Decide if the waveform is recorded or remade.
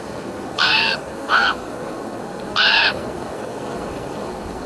remade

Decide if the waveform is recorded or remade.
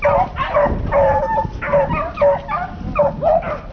recorded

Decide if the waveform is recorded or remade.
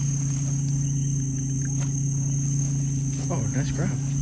recorded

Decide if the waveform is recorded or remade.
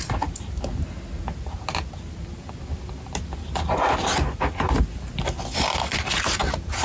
recorded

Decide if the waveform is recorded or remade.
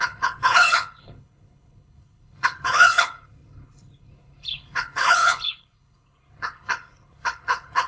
remade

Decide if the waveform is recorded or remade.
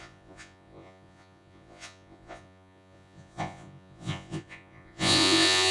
remade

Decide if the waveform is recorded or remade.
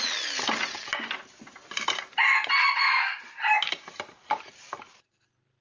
recorded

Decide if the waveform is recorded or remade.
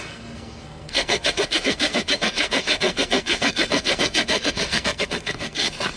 remade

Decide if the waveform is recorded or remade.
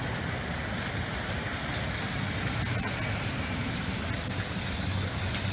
recorded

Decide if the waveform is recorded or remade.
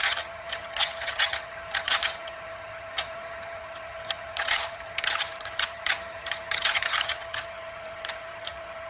remade